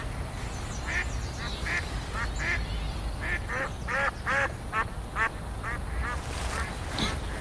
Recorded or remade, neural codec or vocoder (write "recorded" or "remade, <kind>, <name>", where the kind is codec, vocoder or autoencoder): recorded